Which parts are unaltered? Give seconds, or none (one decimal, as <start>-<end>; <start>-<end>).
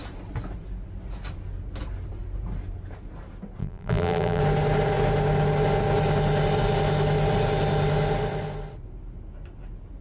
0.0-3.6; 4.4-10.0